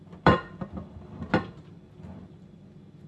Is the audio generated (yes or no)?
no